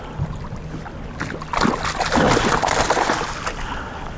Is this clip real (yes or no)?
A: yes